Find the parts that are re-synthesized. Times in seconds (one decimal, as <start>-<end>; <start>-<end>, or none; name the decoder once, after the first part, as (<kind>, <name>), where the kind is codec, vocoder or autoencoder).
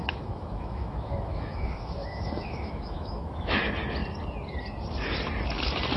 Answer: 0.0-3.6 (autoencoder, DAC-VAE)